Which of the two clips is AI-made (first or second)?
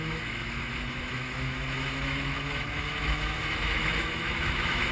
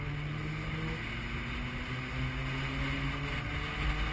first